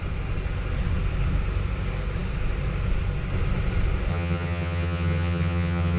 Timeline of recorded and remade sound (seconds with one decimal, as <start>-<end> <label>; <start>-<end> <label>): 0.0-4.1 recorded; 4.1-6.0 remade

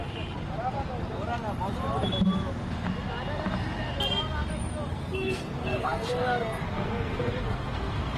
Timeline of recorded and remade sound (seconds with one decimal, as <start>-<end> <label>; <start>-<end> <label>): 0.0-4.9 recorded; 4.9-8.2 remade

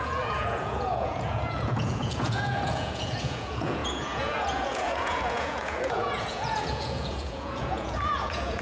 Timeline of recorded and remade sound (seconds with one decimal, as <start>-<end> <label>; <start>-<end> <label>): 0.0-8.6 remade

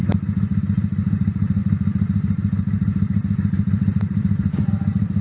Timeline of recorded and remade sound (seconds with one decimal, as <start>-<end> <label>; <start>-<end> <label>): 0.0-0.6 recorded; 0.6-5.2 remade

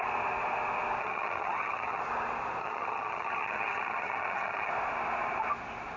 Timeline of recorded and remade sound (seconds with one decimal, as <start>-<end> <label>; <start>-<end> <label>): 0.0-1.0 recorded; 1.0-2.0 remade; 2.0-2.6 recorded; 2.6-4.7 remade; 4.7-6.0 recorded

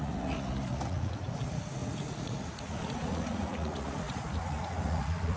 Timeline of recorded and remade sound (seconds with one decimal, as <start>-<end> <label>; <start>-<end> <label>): 0.0-5.4 remade